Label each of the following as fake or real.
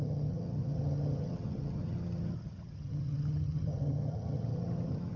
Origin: fake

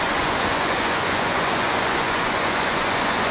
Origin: fake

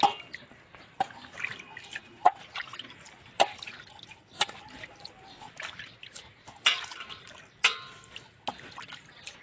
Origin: real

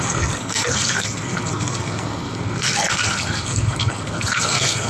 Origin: fake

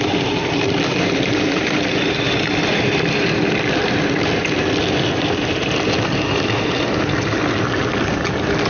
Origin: real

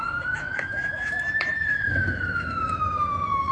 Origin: fake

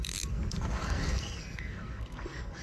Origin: fake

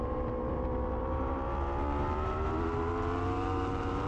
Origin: fake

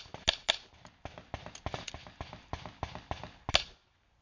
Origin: real